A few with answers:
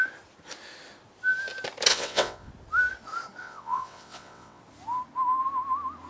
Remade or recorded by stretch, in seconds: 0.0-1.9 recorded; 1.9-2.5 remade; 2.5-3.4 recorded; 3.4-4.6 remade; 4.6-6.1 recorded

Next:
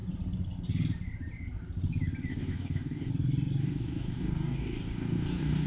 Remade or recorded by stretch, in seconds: 0.0-2.3 recorded; 2.3-3.1 remade; 3.1-3.6 recorded; 3.6-5.7 remade